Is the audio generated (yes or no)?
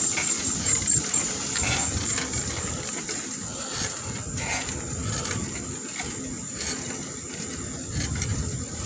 no